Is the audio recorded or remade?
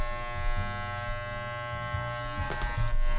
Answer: recorded